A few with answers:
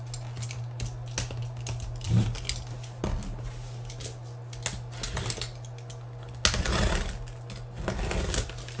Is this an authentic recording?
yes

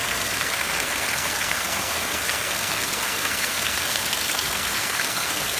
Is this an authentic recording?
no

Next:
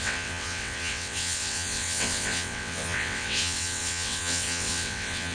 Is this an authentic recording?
no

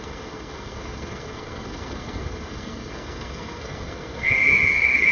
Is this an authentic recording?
no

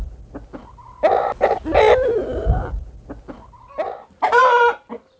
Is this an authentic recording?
yes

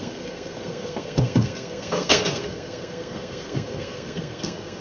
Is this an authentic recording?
no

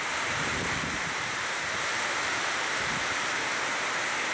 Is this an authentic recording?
no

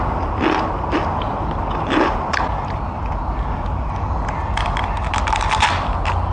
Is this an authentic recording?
yes